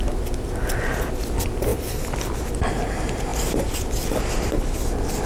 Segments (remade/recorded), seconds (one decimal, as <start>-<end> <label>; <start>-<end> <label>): 0.0-1.7 recorded; 1.7-2.5 remade; 2.5-3.3 recorded; 3.3-5.3 remade